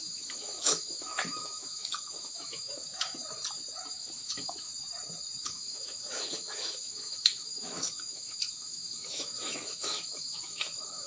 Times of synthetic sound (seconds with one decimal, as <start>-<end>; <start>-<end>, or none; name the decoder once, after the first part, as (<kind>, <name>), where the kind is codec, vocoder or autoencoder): 0.0-3.2 (autoencoder, DAC-VAE); 3.9-4.7; 5.4-11.1